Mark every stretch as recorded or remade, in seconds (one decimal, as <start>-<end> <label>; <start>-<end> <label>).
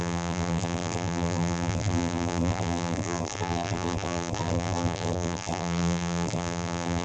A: 0.0-7.0 remade